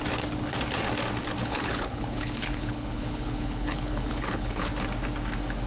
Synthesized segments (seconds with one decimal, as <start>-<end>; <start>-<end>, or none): 1.4-4.7